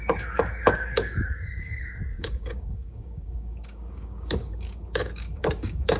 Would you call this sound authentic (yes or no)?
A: no